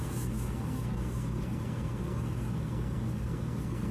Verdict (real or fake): fake